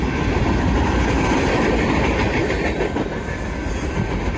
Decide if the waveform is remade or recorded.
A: recorded